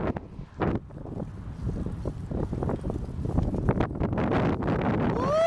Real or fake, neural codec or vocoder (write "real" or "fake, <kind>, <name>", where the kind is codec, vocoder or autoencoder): real